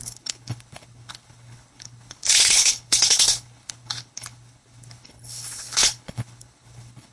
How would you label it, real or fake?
fake